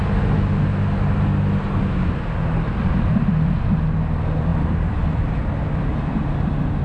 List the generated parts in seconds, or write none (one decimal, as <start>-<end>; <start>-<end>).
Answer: 4.5-5.4